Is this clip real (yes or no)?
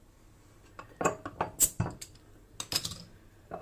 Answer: yes